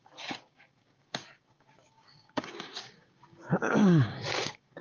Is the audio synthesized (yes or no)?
yes